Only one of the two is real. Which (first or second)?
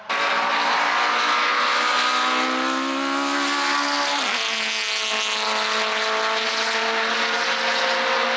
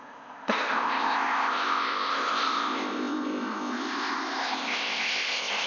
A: first